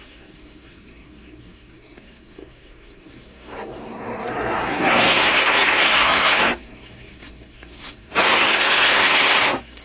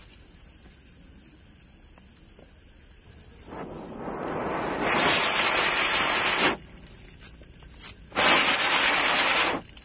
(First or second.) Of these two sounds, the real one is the second